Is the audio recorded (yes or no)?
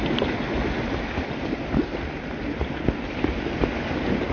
yes